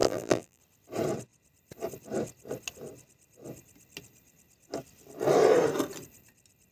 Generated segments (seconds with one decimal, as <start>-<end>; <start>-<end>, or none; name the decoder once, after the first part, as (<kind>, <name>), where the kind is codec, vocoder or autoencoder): 0.0-0.6 (vocoder, BigVGAN v2)